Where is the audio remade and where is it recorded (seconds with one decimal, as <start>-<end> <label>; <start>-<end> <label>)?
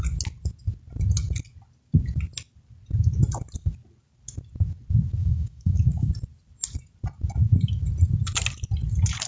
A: 0.0-5.2 recorded; 5.2-6.1 remade; 6.1-9.3 recorded